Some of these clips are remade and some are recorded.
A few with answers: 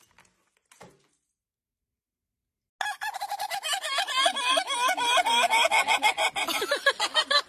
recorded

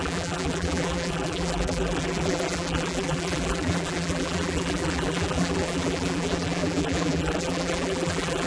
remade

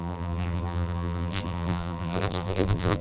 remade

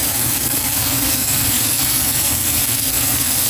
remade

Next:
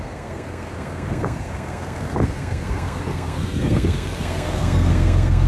remade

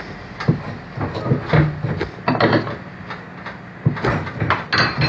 recorded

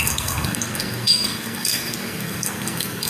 remade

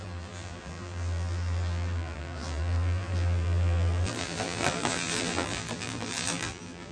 remade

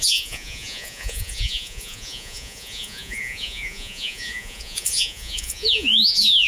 remade